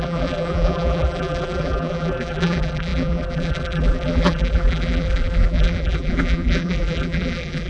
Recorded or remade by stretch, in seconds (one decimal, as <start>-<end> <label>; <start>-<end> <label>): 0.0-7.7 remade